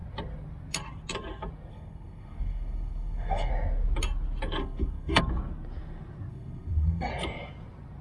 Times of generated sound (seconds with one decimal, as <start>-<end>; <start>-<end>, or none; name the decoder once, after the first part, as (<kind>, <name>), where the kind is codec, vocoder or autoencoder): 1.7-3.5 (codec, SNAC); 4.6-5.2; 6.3-7.1